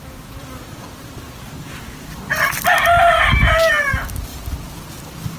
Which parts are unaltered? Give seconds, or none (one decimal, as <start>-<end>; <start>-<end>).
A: 0.0-5.4